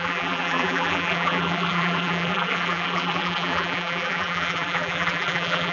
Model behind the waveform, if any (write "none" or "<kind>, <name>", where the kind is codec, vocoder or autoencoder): vocoder, BigVGAN v2